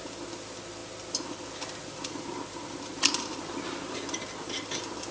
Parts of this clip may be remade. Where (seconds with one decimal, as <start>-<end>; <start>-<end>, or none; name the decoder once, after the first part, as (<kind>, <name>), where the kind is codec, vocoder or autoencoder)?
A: none